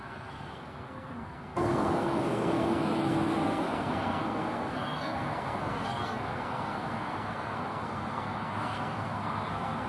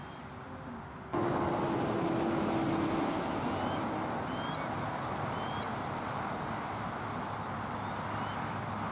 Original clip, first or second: second